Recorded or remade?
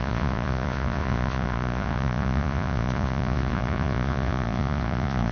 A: remade